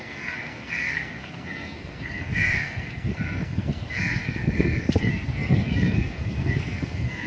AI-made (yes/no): yes